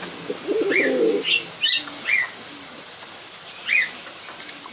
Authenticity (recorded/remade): recorded